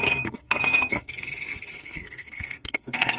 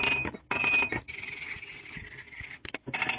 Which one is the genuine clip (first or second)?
second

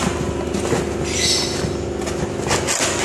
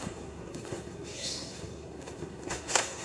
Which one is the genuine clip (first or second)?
first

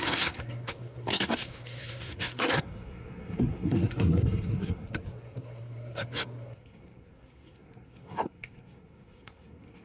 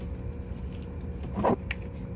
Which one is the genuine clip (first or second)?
second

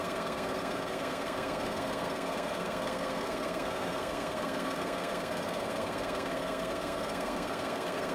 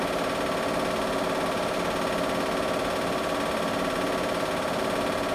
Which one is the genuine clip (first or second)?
second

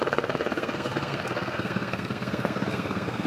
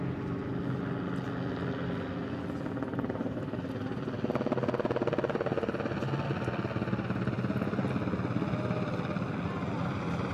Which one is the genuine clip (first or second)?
second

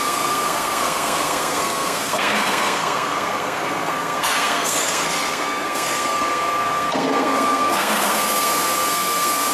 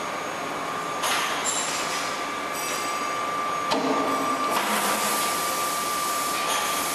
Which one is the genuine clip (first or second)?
second